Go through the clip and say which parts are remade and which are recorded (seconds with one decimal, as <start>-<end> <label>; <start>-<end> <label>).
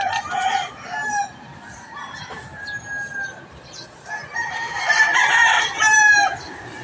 0.0-6.8 recorded